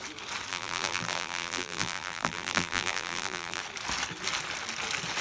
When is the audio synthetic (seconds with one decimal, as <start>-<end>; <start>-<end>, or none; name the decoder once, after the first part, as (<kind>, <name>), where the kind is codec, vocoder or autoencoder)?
0.5-3.6 (vocoder, BigVGAN v2)